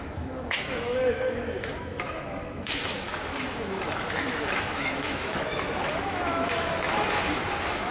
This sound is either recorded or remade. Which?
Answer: remade